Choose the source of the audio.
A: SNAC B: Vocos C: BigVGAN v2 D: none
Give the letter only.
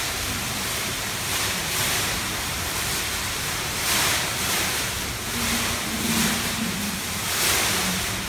C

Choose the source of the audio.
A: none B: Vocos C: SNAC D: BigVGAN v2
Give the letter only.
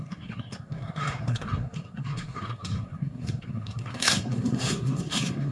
C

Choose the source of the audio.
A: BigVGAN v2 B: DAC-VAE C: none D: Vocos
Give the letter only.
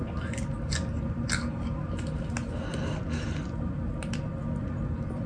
C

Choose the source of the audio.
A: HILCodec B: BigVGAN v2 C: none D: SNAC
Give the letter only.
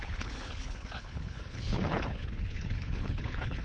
A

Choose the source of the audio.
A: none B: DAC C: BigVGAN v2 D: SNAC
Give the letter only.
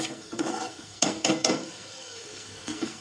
D